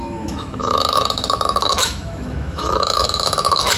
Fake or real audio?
fake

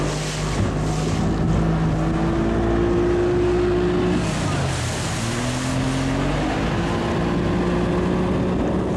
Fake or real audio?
real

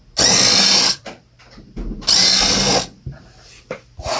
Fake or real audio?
real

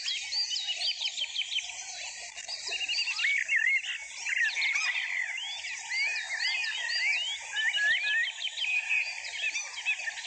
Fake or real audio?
real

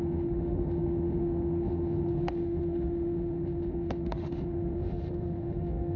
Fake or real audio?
fake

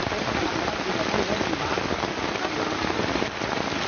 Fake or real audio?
real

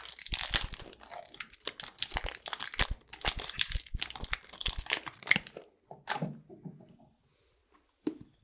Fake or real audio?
real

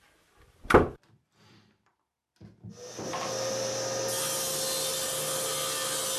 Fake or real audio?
real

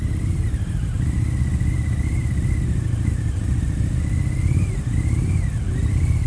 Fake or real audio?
real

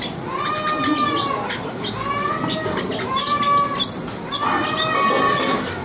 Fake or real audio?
real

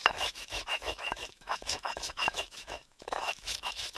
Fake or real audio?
fake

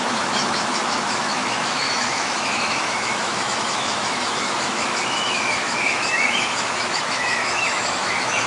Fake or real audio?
fake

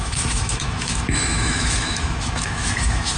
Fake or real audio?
fake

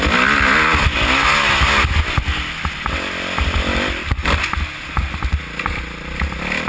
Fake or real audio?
real